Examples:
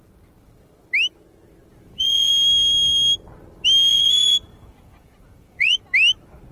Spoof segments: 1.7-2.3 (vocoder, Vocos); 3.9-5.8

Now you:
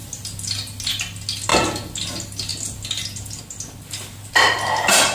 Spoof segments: none

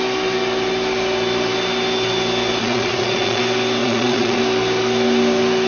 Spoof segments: 2.6-3.4 (vocoder, Vocos); 3.8-4.4

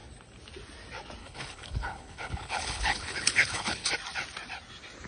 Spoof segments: 1.2-3.9 (codec, HILCodec)

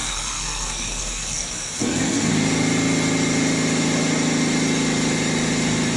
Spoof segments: 0.0-2.3 (codec, SNAC)

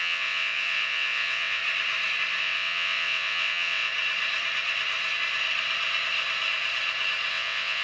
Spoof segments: 0.0-1.6 (vocoder, WaveNeXt); 2.4-3.9; 7.3-7.8